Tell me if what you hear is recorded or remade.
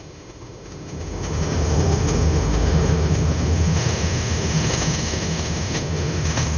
remade